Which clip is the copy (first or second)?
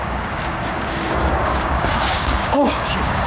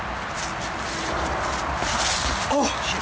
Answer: first